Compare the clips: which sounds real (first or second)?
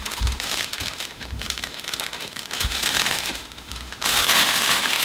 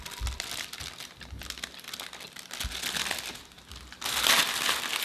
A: second